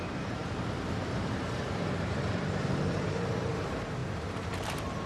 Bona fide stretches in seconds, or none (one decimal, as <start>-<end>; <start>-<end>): none